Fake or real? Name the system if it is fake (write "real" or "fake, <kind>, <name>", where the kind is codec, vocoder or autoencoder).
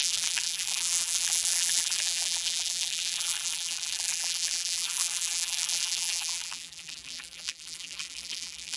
fake, vocoder, BigVGAN v2